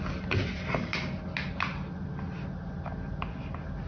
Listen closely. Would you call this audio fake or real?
real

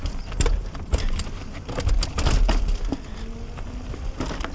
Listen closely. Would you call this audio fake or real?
real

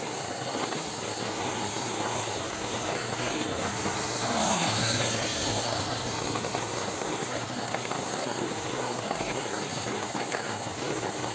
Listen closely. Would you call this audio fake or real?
fake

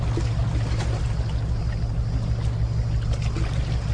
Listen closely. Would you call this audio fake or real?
real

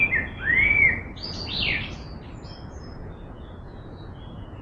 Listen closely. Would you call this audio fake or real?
real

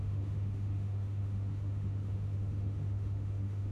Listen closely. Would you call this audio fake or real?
fake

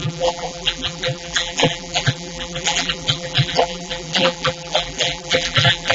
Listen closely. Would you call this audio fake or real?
fake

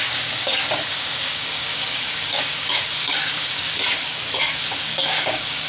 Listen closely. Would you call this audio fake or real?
fake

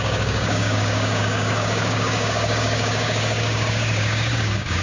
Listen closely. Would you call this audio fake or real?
fake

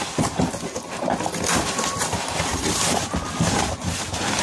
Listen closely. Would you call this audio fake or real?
real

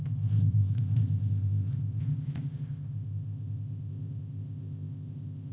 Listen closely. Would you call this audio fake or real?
fake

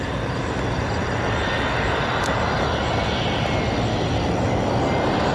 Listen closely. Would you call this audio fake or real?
real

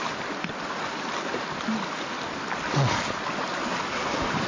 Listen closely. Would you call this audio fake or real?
real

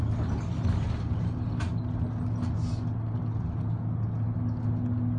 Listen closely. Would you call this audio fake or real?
real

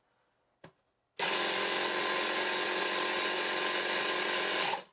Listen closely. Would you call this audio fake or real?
real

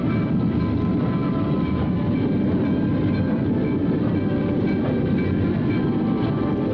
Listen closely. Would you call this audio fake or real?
real